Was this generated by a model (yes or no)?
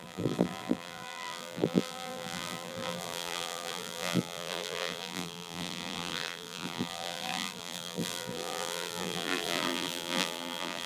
yes